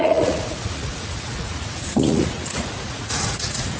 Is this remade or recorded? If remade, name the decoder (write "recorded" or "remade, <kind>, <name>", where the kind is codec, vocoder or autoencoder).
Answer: remade, vocoder, Vocos